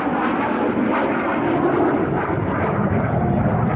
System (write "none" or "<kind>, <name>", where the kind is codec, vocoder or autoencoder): vocoder, BigVGAN v2